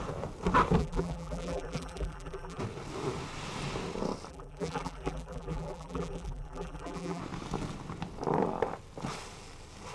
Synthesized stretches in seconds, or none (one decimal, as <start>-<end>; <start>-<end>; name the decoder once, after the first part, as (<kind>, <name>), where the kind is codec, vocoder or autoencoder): 0.8-2.6 (vocoder, BigVGAN v2); 4.3-7.2